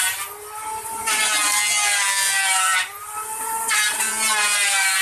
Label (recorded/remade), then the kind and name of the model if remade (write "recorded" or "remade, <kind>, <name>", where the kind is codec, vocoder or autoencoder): remade, vocoder, BigVGAN v2